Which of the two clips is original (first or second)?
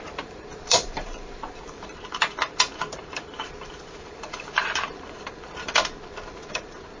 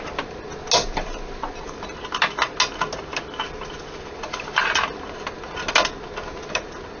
second